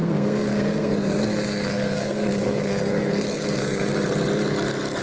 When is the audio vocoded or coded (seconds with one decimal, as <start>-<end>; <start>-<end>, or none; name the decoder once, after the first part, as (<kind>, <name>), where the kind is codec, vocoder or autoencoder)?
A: 0.0-3.9 (codec, SNAC)